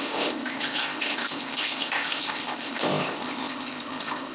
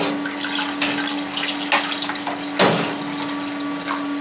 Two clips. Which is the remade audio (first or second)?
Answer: first